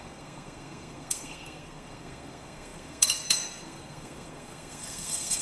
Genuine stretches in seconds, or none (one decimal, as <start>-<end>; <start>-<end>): none